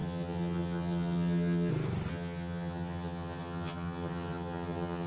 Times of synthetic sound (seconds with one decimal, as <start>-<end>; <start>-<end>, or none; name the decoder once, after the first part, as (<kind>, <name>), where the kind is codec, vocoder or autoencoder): 0.0-1.7 (vocoder, HiFi-GAN); 2.1-5.1